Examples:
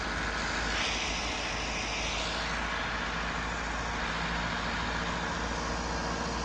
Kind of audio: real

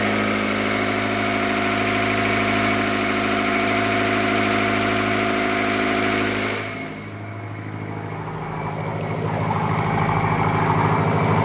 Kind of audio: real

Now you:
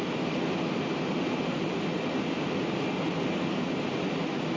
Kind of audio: real